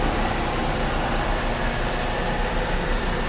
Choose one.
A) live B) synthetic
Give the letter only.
A